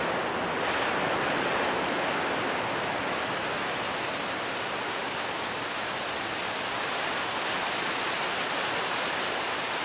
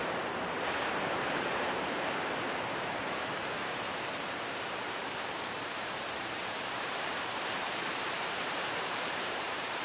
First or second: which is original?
first